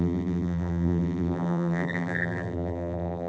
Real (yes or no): no